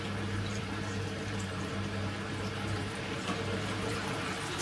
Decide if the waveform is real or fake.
fake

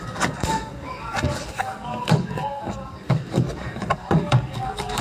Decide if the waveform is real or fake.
fake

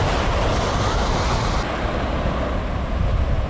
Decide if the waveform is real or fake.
real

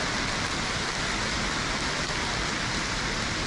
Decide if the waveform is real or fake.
real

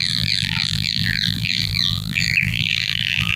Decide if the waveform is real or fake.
fake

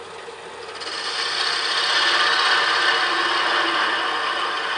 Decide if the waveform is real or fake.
real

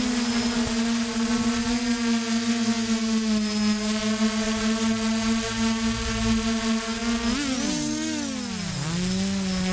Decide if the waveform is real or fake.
real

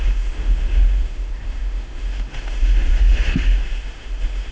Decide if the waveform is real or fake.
fake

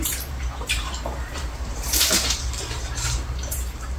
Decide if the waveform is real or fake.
fake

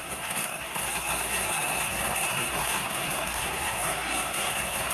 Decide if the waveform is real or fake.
fake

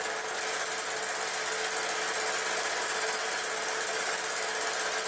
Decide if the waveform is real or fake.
real